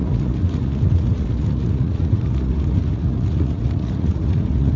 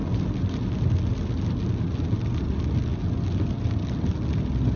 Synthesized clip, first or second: first